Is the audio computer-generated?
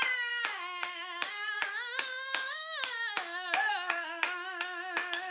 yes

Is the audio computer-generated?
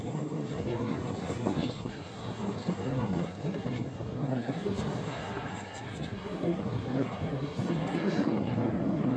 yes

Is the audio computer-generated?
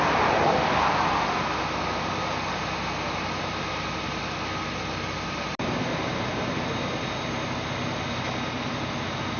no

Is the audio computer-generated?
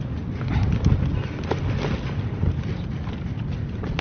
no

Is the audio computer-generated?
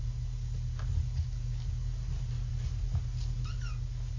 no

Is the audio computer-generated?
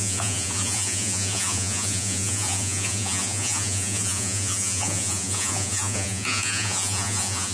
yes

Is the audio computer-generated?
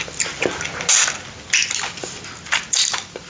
no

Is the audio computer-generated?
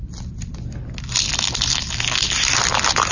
no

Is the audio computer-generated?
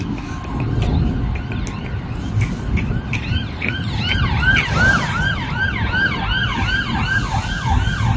no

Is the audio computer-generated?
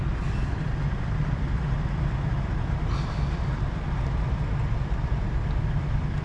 no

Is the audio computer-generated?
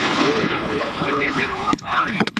yes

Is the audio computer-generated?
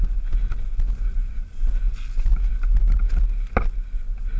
no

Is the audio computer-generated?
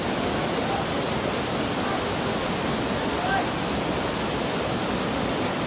no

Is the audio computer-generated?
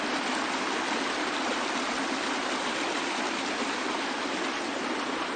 no